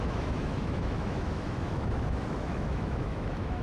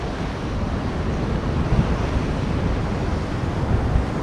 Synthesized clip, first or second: first